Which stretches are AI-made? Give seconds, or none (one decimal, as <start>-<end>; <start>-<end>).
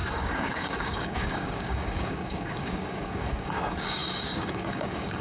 0.0-5.2